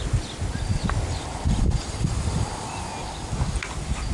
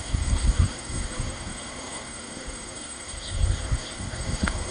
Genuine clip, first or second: first